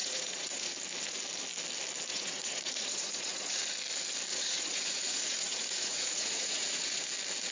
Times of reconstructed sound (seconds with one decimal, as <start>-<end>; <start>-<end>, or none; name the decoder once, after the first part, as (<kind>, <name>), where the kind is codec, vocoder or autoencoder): 0.0-0.7 (vocoder, Vocos); 2.1-3.6; 4.3-7.0